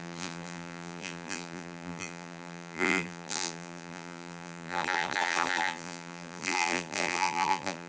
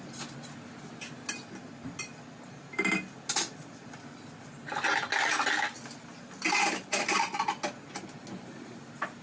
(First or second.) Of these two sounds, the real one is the second